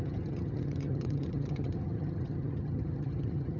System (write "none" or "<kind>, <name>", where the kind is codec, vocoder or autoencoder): vocoder, HiFi-GAN